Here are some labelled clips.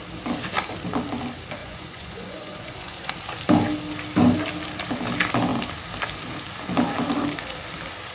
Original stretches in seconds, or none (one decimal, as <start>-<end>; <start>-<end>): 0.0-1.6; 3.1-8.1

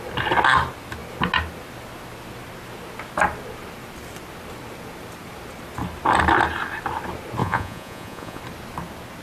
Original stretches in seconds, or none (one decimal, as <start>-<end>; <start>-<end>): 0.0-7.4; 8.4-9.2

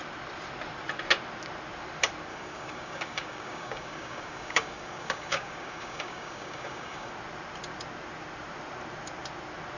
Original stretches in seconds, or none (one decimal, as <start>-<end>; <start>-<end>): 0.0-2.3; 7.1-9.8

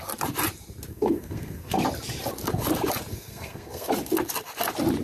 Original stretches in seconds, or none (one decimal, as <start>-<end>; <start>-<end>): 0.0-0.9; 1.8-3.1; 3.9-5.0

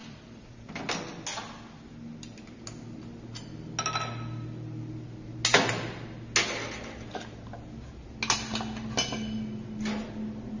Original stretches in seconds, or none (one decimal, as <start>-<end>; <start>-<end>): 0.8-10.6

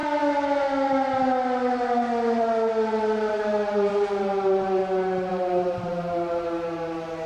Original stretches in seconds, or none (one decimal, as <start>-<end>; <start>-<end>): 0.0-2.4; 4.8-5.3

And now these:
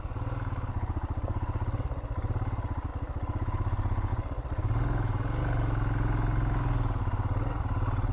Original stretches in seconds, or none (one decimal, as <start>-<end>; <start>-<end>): 0.0-8.1

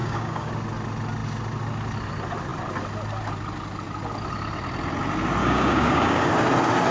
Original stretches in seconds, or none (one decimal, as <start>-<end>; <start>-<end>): 0.5-5.4; 6.3-6.9